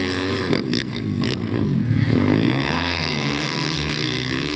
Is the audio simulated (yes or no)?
yes